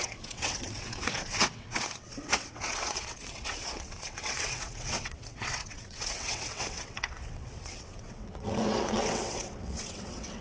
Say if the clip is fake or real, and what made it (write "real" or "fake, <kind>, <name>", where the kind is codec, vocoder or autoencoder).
fake, vocoder, WaveNeXt